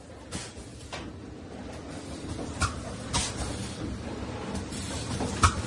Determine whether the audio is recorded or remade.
recorded